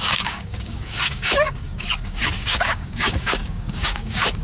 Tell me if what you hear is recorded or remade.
remade